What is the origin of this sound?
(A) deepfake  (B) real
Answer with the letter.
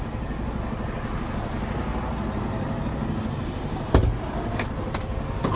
B